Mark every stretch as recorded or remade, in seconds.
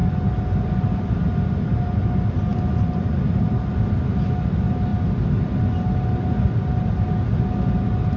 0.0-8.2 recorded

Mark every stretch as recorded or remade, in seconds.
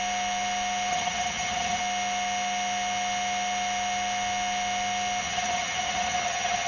0.0-0.9 recorded; 0.9-1.8 remade; 1.8-5.2 recorded; 5.2-6.7 remade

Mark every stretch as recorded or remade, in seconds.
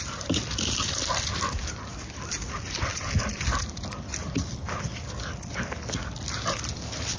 0.0-7.2 recorded